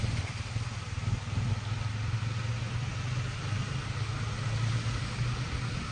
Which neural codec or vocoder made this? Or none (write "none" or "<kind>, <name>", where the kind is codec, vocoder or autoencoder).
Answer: none